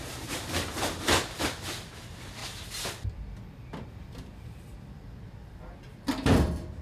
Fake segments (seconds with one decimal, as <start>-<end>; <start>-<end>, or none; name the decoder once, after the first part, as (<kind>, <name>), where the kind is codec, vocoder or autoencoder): 2.4-6.8 (vocoder, BigVGAN v2)